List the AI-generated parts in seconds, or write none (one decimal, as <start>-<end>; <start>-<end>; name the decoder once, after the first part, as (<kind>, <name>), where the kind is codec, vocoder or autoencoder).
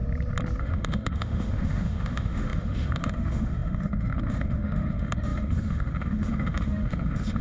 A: 0.6-7.4 (autoencoder, DAC-VAE)